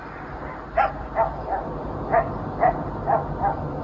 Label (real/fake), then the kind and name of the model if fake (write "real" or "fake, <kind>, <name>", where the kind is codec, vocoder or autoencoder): real